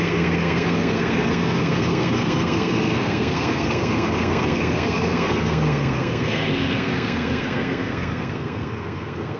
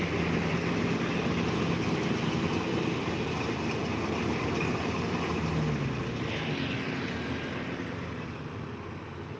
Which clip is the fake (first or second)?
first